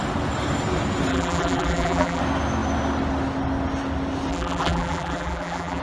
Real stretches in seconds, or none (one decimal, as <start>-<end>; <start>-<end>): 0.0-1.1; 2.2-4.3